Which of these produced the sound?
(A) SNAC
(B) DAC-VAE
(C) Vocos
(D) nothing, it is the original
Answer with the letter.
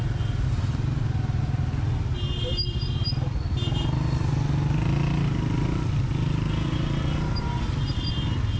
D